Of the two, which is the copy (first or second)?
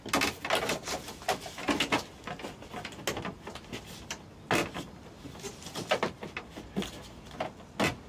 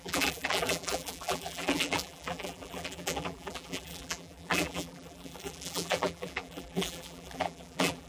second